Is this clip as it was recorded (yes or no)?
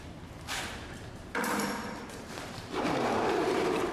no